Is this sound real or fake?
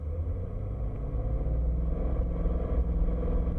real